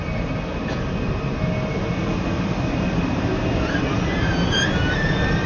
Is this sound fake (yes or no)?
no